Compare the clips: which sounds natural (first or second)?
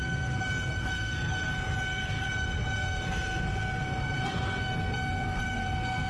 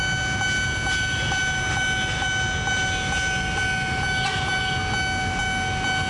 second